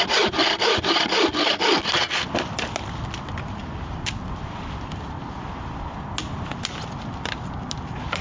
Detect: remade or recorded recorded